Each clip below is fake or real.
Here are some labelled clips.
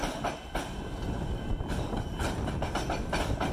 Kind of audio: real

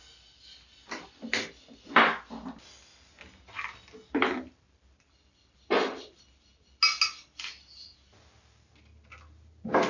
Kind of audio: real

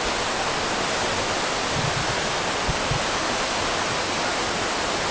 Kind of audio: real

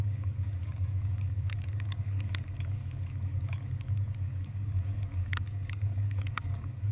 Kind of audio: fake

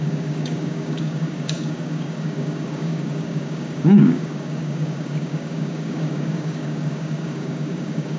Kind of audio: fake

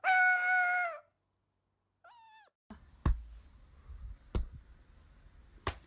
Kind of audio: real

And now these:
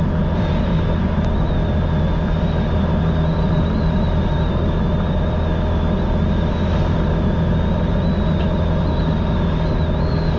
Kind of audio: real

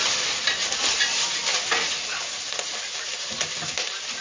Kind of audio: real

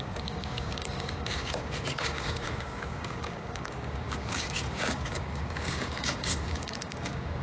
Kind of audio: fake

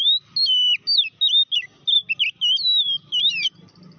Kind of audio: real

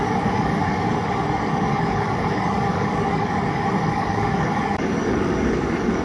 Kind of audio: fake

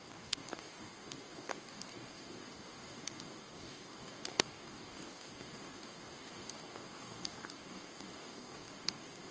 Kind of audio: fake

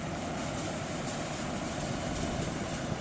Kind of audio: real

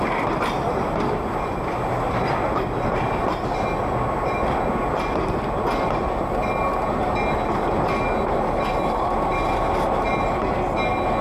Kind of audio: real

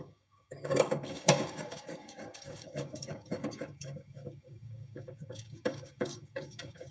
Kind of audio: fake